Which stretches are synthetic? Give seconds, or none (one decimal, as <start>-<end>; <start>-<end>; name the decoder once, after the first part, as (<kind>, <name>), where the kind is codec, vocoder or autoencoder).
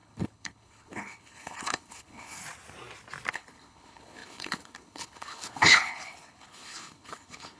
0.0-2.4 (codec, HILCodec); 3.3-7.6